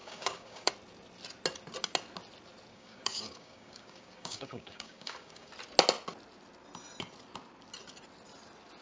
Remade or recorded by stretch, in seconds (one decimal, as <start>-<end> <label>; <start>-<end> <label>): 0.0-0.7 remade; 0.7-2.7 recorded; 2.7-5.5 remade; 5.5-8.8 recorded